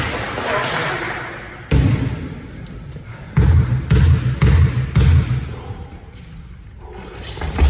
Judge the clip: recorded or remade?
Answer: recorded